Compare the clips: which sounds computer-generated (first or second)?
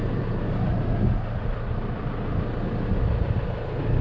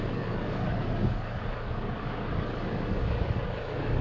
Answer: second